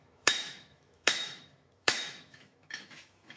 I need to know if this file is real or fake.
fake